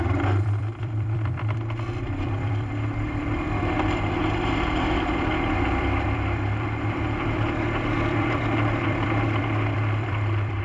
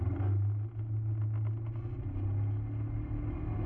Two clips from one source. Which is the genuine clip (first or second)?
second